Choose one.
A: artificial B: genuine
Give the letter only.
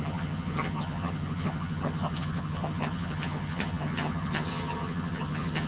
A